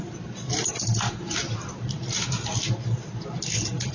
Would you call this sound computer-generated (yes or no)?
no